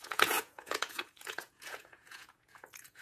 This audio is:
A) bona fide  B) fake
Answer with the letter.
B